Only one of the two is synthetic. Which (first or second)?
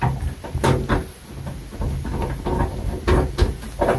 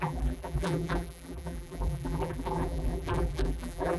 second